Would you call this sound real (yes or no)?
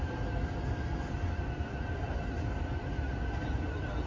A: yes